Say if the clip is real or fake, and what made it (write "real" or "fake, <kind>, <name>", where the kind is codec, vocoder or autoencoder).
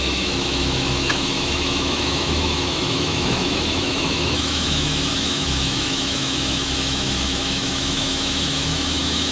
fake, autoencoder, DAC-VAE